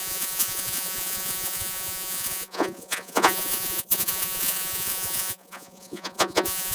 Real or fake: fake